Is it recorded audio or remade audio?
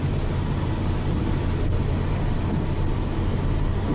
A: recorded